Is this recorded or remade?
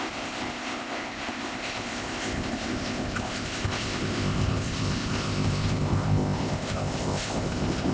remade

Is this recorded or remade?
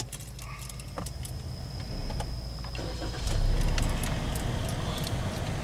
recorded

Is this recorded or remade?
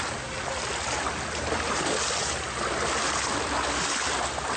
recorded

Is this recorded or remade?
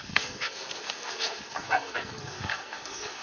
remade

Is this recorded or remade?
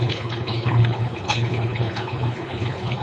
remade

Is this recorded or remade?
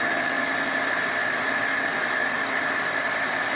recorded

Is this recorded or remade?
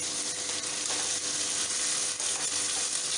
recorded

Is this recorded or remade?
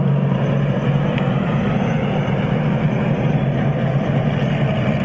recorded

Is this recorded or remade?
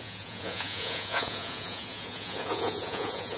remade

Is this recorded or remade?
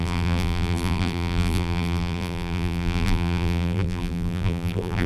remade